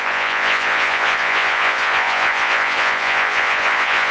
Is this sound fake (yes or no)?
yes